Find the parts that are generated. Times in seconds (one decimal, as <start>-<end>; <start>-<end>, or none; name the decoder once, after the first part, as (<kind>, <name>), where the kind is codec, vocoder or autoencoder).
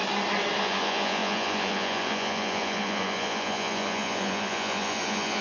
0.6-5.4 (vocoder, Vocos)